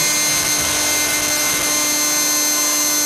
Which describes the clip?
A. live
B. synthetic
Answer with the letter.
A